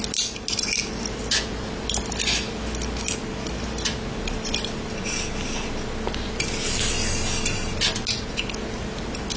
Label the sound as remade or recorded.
recorded